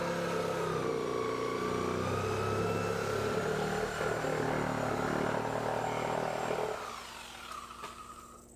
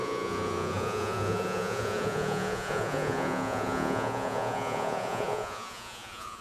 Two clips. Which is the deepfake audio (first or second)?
second